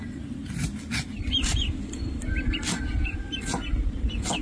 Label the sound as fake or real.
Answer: fake